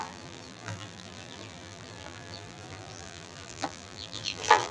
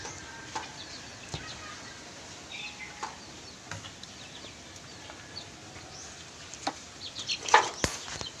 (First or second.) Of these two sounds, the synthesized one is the first